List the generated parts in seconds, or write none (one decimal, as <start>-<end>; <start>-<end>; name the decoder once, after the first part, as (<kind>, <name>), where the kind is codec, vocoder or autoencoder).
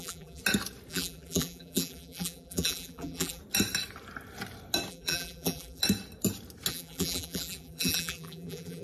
0.0-0.4 (vocoder, BigVGAN v2); 0.9-3.4; 4.9-5.8; 6.7-8.8